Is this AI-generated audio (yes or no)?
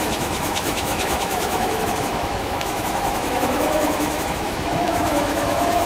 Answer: yes